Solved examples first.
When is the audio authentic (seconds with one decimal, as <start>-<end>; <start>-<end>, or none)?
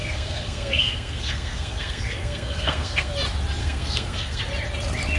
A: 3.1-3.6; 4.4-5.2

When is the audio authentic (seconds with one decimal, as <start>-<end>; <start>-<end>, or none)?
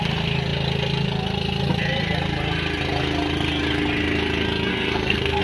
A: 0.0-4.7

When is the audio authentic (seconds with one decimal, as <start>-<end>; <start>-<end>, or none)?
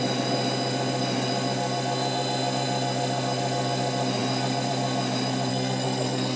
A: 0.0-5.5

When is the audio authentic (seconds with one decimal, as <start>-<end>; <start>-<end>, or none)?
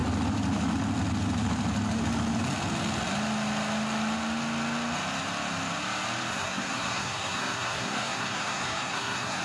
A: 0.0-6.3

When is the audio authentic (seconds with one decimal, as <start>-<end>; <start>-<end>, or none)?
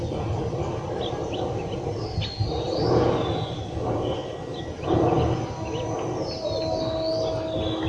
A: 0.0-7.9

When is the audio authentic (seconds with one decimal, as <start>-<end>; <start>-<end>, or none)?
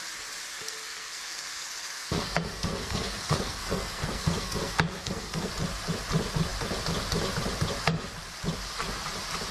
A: 0.0-0.4; 5.5-9.5